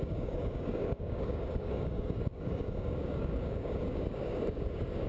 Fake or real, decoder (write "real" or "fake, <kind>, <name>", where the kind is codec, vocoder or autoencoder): fake, codec, DAC